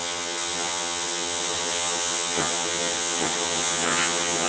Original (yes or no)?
no